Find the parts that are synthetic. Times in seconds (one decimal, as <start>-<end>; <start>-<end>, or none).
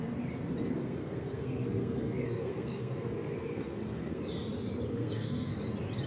0.8-4.2; 4.9-5.5